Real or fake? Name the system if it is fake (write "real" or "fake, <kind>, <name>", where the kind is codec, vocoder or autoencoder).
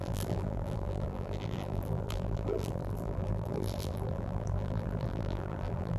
fake, vocoder, BigVGAN v2